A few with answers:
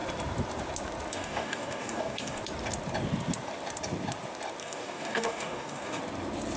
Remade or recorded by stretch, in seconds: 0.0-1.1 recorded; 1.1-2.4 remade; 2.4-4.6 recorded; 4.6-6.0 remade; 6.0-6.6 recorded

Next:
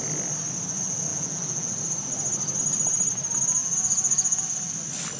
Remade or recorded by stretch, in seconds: 0.0-1.1 recorded; 1.1-1.7 remade; 1.7-3.6 recorded; 3.6-4.4 remade; 4.4-5.2 recorded

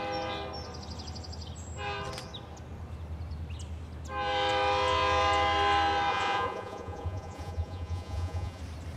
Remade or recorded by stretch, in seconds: 0.0-6.1 recorded; 6.1-8.6 remade; 8.6-9.0 recorded

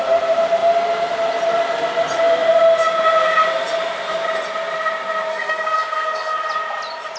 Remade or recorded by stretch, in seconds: 0.0-5.3 recorded; 5.3-6.5 remade; 6.5-7.2 recorded